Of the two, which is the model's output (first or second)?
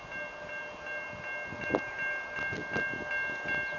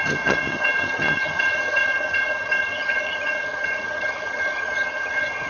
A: second